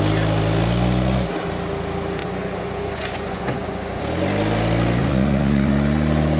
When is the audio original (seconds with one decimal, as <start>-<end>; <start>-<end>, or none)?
0.0-2.2; 4.0-5.0; 5.7-6.4